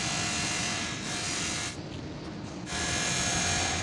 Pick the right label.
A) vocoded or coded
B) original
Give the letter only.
B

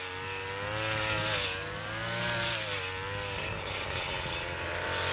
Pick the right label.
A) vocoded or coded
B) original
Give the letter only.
B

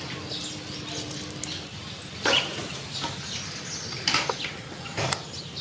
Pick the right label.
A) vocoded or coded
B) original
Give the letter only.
B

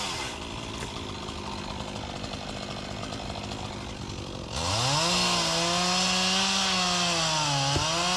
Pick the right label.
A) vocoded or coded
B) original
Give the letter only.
B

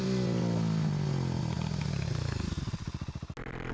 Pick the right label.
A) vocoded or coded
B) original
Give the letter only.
B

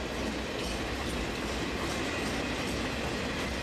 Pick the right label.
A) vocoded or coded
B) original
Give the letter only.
B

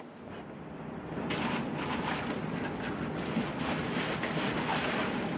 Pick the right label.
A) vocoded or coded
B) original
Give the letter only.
B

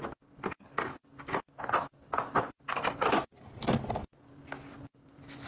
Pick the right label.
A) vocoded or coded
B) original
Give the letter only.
B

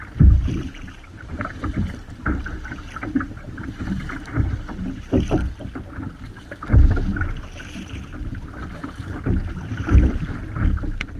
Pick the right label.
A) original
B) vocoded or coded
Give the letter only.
A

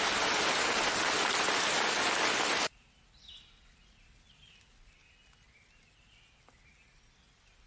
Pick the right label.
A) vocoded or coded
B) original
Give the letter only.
B